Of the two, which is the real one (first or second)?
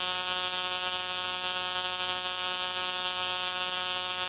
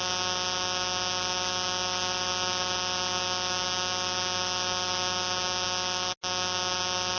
second